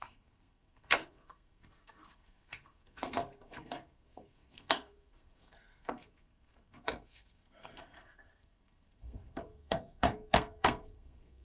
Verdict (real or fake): fake